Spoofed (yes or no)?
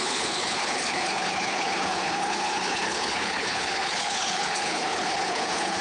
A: yes